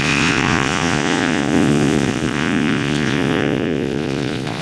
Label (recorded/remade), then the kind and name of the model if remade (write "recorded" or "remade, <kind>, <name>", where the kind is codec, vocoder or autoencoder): remade, vocoder, Vocos